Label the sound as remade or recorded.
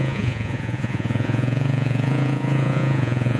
remade